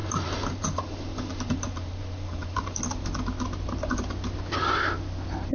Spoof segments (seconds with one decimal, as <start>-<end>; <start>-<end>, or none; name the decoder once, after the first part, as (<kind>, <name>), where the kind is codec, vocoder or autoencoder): 0.0-2.8 (vocoder, BigVGAN v2)